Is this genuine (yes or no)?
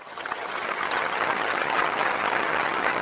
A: no